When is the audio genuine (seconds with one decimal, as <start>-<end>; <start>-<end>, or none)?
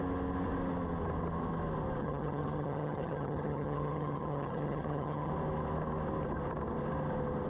0.0-2.0; 5.3-7.5